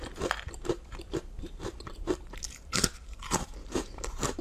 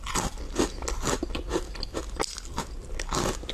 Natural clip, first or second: second